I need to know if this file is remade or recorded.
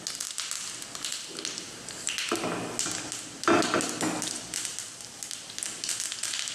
recorded